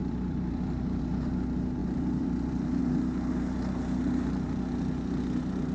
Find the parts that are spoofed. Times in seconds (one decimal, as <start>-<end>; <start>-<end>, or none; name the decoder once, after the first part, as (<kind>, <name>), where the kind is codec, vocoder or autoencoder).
0.0-1.0 (vocoder, BigVGAN v2); 1.8-2.8